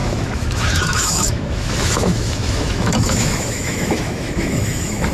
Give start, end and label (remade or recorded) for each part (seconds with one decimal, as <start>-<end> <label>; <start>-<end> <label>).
0.0-5.1 remade